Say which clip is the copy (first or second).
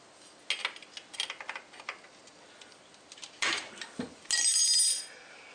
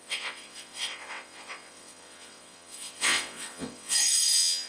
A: second